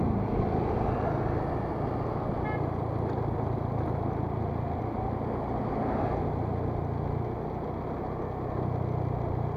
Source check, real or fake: real